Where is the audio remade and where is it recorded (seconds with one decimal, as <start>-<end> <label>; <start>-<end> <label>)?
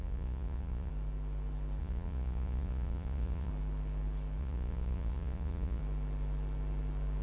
0.0-0.9 remade; 0.9-1.8 recorded; 1.8-3.5 remade; 3.5-4.4 recorded; 4.4-5.8 remade; 5.8-7.2 recorded